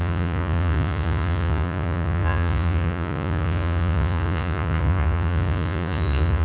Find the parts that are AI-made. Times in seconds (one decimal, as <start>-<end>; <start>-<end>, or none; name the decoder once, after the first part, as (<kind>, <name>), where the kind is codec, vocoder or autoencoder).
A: 0.0-6.4 (vocoder, Vocos)

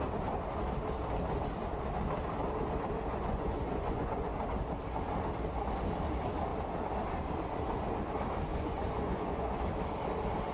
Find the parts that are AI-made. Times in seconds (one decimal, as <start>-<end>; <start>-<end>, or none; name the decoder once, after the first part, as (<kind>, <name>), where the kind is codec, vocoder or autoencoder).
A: 3.1-4.3 (vocoder, Vocos); 8.5-9.6